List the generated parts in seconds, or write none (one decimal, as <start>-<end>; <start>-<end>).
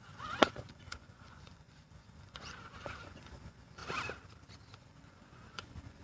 0.0-3.8; 4.7-6.0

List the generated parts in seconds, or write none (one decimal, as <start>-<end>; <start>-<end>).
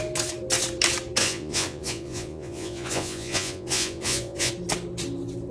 1.2-4.5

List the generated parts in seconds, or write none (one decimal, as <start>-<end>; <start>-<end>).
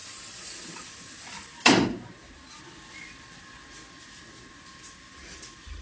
none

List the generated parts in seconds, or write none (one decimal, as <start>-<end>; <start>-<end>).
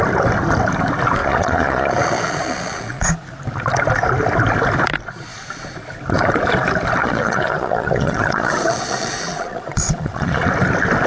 1.2-3.1; 7.0-10.5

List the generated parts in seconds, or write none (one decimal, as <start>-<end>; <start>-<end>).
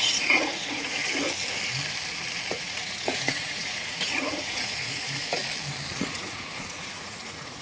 0.0-1.0; 2.5-5.4; 6.0-7.6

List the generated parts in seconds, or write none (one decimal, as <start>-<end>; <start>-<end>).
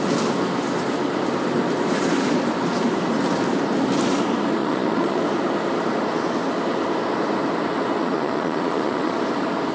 4.6-5.2; 8.0-9.2